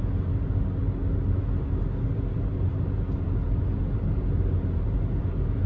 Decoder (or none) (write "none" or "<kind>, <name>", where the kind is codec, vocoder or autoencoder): none